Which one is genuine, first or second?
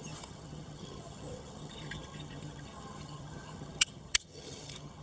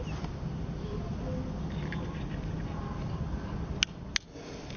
second